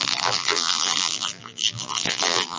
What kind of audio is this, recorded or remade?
remade